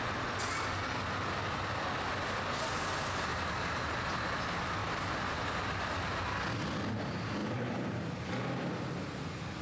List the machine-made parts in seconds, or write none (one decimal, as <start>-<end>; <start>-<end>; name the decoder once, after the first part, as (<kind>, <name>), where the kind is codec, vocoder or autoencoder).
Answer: 3.3-3.9 (vocoder, BigVGAN v2); 4.8-5.9; 7.4-8.1